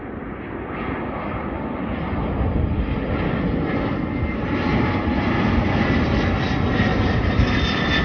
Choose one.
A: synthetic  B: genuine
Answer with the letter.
B